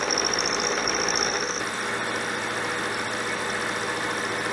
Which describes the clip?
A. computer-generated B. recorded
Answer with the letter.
B